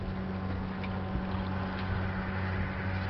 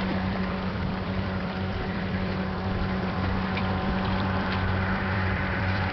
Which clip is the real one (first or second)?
first